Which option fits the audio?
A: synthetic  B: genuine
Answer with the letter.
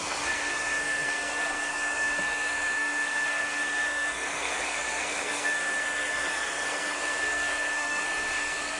A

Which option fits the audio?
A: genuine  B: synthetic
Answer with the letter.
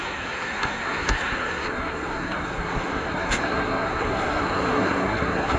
B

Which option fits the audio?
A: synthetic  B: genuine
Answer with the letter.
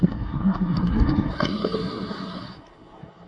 A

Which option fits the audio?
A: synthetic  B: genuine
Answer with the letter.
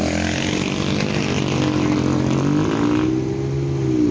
B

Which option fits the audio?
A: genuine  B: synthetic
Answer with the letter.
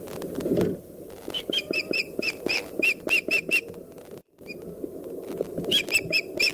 A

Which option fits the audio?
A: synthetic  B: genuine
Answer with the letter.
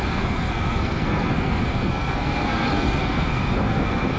A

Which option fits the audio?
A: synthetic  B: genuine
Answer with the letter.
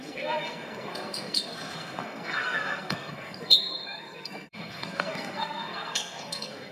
A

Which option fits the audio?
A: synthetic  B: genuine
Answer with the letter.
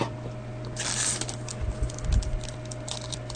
B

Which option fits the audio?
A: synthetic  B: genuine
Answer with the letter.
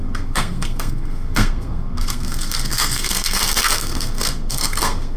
A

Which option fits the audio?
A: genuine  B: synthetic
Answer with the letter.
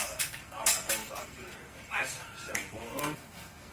B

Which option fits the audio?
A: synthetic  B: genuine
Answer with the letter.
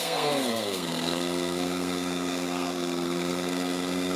A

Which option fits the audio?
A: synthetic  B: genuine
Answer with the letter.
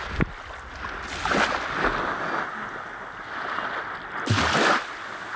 B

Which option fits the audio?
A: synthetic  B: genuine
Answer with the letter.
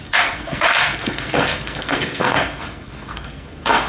A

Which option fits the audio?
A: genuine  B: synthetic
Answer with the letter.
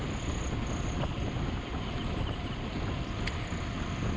A